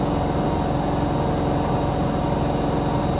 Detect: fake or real real